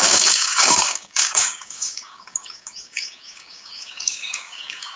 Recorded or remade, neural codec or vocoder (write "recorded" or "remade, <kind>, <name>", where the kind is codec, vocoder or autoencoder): remade, codec, DAC